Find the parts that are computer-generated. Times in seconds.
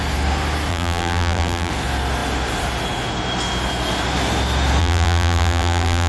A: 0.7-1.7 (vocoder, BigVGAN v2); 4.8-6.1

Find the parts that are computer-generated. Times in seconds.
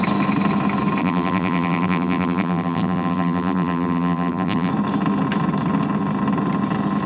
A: 1.0-4.7 (vocoder, BigVGAN v2)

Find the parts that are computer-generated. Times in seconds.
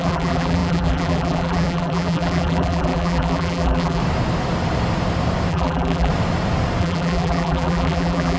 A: 0.0-4.0 (vocoder, BigVGAN v2); 5.5-6.1; 6.8-8.4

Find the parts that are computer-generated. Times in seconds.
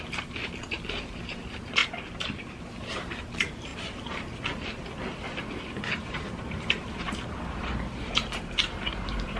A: 0.0-1.8 (vocoder, BigVGAN v2); 2.6-3.7; 5.6-9.4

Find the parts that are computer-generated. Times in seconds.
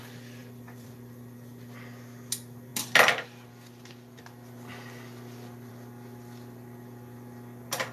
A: 0.4-0.9 (vocoder, BigVGAN v2)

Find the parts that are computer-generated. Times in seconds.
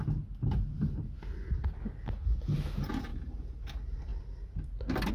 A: 3.1-3.6 (vocoder, BigVGAN v2)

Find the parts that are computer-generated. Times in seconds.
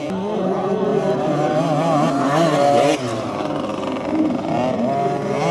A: none